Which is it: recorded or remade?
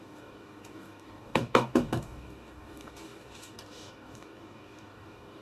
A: remade